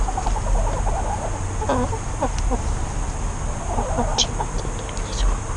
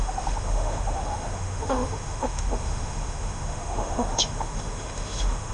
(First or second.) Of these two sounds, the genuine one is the first